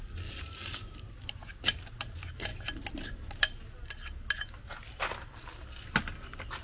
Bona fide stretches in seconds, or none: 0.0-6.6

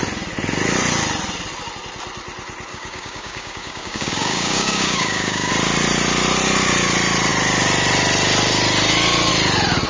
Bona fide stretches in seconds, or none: 0.0-2.7; 5.5-9.9

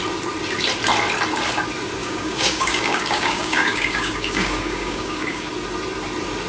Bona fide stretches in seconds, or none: 0.0-2.0; 5.5-6.5

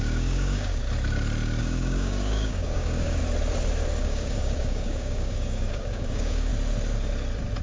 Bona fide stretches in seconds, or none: 0.8-1.6; 3.2-4.0; 6.5-7.6